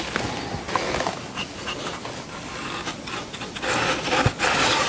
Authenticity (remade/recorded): recorded